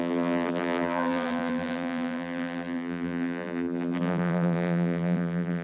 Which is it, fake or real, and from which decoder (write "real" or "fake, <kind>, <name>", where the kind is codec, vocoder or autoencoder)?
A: fake, vocoder, BigVGAN v2